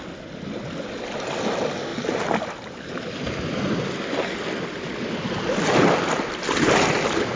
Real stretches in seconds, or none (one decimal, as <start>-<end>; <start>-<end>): 0.0-7.4